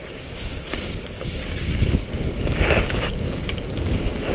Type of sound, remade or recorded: remade